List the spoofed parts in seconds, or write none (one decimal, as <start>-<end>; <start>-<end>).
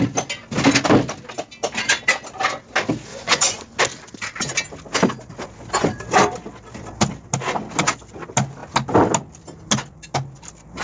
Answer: 3.1-3.8